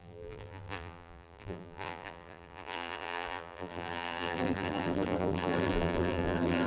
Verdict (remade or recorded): remade